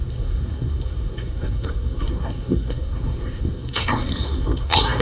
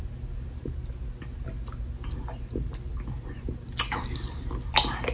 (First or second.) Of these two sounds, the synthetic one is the first